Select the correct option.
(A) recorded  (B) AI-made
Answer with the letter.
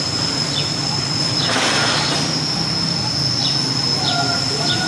A